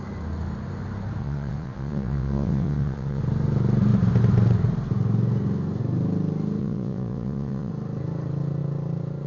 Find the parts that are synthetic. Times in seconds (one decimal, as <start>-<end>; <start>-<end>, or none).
1.2-3.2; 6.6-7.7